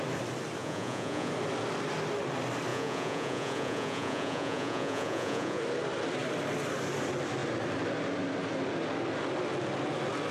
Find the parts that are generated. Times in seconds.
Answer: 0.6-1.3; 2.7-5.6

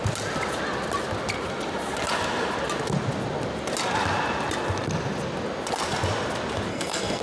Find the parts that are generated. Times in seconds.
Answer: 6.7-7.2

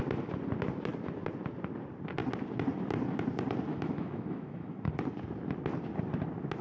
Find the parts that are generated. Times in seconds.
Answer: 3.7-4.9

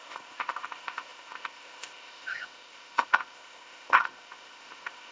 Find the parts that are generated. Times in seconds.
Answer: 0.0-5.1

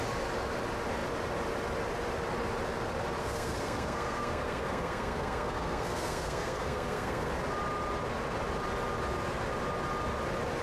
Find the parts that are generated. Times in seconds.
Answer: 3.2-7.3

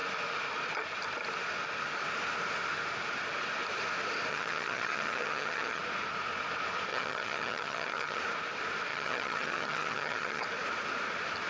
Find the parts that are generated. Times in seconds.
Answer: 4.3-5.8; 6.9-8.2; 8.9-10.4